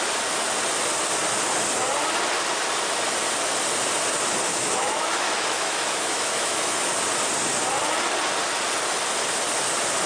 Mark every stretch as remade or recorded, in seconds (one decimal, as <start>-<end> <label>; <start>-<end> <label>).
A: 0.0-4.5 recorded; 4.5-6.9 remade; 6.9-10.1 recorded